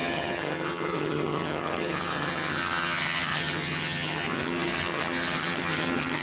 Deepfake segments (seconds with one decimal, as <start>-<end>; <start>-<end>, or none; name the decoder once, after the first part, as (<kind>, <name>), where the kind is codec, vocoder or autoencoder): 0.0-6.2 (vocoder, HiFi-GAN)